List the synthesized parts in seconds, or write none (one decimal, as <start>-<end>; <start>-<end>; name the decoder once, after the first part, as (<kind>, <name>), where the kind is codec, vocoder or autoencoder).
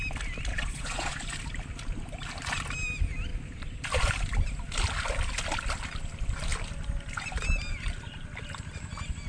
0.5-1.2 (vocoder, Vocos)